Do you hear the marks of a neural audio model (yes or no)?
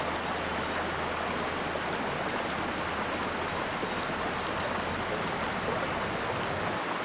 no